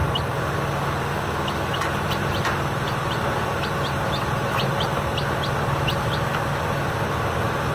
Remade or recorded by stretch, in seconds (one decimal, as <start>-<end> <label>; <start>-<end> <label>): 0.0-1.7 recorded; 1.7-5.2 remade; 5.2-7.7 recorded